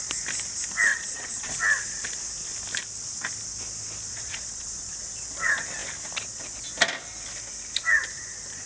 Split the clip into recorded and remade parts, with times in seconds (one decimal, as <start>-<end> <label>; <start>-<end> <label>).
0.0-0.9 recorded; 0.9-1.5 remade; 1.5-4.1 recorded; 4.1-5.1 remade; 5.1-8.7 recorded